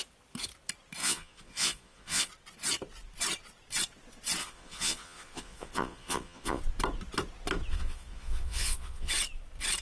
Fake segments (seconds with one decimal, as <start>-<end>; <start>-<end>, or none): 1.0-2.3; 4.4-6.6; 7.7-9.1